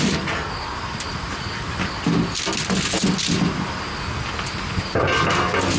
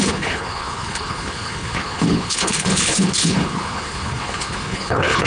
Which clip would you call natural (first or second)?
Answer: first